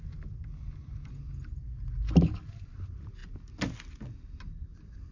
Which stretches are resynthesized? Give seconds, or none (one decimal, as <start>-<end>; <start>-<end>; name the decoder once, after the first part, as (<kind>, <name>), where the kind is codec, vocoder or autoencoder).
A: none